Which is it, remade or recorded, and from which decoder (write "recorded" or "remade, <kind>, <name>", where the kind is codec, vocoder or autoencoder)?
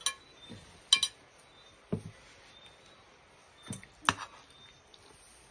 recorded